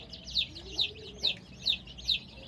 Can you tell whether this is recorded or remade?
recorded